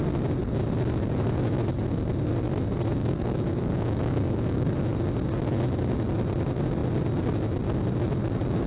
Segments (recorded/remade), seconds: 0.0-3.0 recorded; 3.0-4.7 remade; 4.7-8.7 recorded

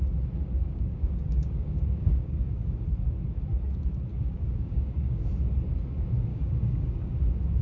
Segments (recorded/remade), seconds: 0.0-0.6 recorded; 0.6-2.8 remade; 2.8-4.1 recorded; 4.1-5.3 remade; 5.3-6.3 recorded; 6.3-7.1 remade; 7.1-7.6 recorded

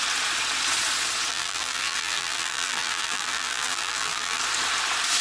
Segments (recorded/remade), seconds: 0.0-1.3 recorded; 1.3-4.4 remade; 4.4-5.2 recorded